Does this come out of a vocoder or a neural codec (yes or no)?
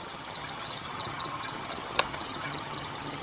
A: yes